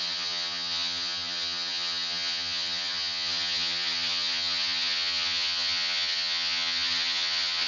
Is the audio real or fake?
fake